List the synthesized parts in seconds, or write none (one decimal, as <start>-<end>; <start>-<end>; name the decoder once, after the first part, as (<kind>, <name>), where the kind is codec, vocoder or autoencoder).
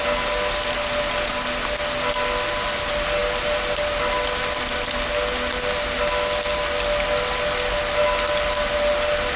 none